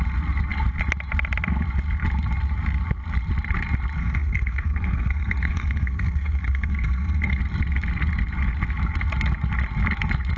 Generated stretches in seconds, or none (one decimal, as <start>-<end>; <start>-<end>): 4.0-7.4